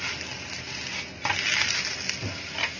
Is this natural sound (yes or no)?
yes